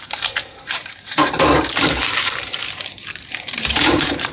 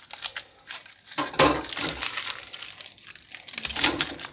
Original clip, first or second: second